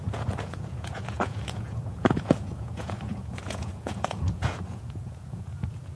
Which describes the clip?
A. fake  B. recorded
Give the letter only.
A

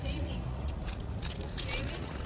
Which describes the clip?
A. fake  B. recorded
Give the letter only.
A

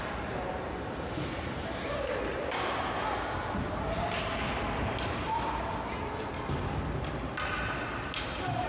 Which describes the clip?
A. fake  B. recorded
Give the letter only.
B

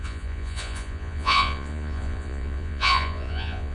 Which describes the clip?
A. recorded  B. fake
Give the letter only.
B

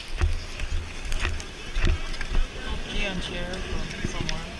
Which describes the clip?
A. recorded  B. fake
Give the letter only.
A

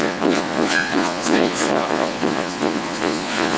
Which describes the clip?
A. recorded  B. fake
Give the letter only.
B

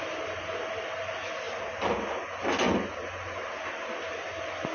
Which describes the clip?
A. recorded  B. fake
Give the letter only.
A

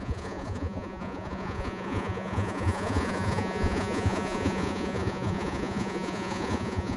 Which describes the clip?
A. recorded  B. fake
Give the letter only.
B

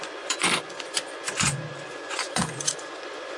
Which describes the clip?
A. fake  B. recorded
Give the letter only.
A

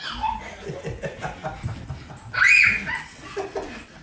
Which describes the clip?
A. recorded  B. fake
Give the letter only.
A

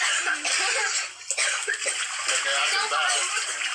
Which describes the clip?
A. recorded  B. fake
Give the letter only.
A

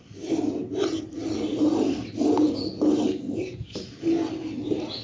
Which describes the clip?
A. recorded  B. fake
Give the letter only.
A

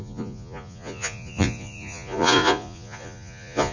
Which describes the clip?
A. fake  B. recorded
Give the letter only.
A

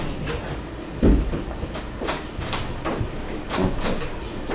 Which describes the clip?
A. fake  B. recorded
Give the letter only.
B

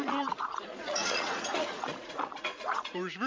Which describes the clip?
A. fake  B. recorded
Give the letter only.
A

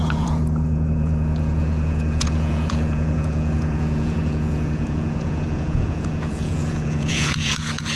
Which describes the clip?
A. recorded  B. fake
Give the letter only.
B